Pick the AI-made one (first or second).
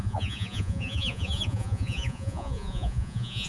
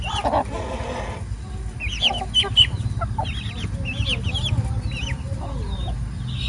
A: first